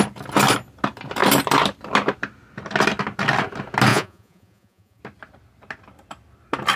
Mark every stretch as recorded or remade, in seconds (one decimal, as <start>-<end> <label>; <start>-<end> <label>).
0.0-3.9 recorded; 3.9-5.0 remade; 5.0-6.8 recorded